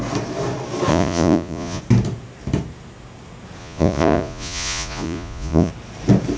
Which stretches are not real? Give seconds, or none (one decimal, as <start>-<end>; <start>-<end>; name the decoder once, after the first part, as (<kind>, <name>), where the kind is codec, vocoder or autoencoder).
0.9-1.8 (vocoder, Vocos); 3.6-5.7